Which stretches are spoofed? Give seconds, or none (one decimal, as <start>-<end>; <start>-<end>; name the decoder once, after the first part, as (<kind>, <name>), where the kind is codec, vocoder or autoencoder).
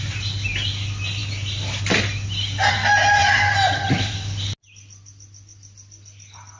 none